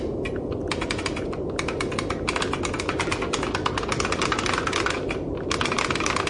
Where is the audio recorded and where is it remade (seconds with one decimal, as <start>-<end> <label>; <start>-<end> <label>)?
0.0-6.3 recorded